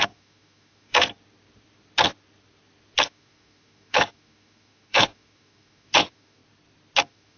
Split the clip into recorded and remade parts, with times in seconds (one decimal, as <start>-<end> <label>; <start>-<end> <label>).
0.0-1.1 remade; 1.1-3.0 recorded; 3.0-6.4 remade; 6.4-7.0 recorded; 7.0-7.4 remade